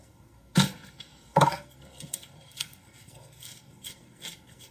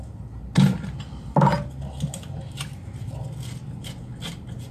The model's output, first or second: first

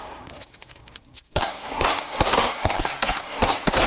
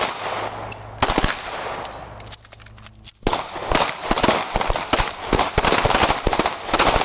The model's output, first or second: first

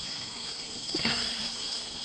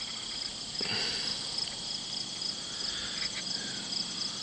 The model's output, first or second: first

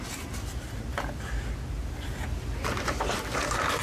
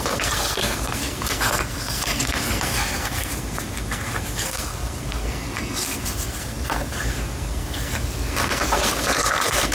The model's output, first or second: second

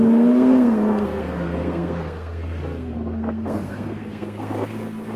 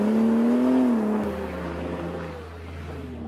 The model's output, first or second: first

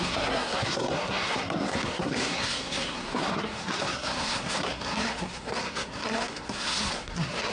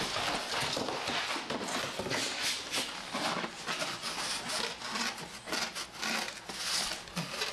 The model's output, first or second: first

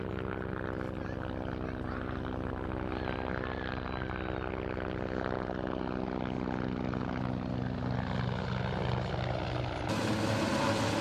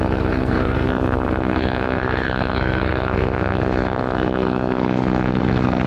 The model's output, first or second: second